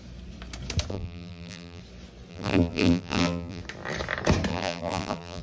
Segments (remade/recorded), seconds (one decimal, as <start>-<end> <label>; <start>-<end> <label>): 0.0-0.9 recorded; 0.9-1.8 remade; 1.8-2.3 recorded; 2.3-3.6 remade; 3.6-4.5 recorded; 4.5-5.4 remade